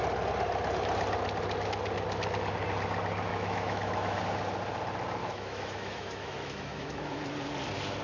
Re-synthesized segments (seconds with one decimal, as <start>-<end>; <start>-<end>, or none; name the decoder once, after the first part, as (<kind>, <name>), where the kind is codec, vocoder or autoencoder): 3.3-4.2 (autoencoder, DAC-VAE); 5.2-7.2